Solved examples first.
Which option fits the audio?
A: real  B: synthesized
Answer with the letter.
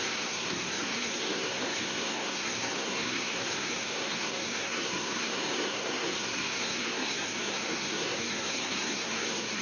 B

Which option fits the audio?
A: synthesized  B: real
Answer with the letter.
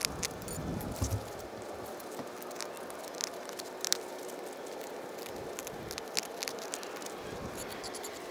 B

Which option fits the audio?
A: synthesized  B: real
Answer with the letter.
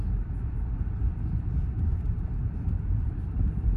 B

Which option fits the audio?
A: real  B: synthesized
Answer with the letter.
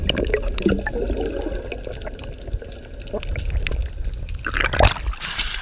A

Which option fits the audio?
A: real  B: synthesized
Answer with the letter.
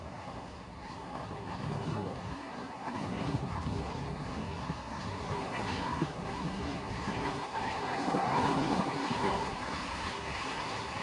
B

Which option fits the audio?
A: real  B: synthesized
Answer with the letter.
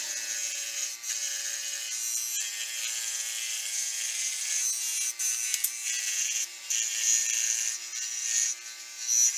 A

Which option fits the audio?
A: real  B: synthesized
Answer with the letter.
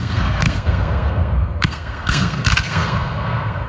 B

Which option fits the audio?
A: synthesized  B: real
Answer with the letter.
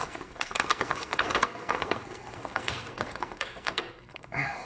A